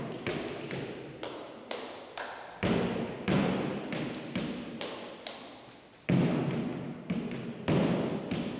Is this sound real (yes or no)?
yes